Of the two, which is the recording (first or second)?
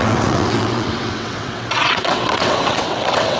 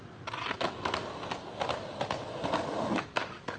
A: second